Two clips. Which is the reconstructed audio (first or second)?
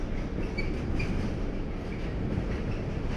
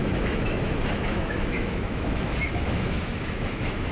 second